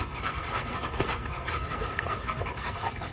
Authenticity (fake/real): fake